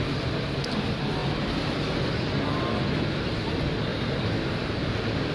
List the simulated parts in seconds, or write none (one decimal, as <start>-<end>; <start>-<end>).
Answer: none